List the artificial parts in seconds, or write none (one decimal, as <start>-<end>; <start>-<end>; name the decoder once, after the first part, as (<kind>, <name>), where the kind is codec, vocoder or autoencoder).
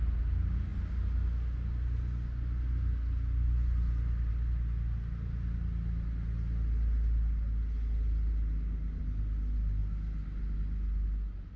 none